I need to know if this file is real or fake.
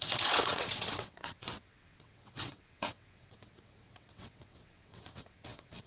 fake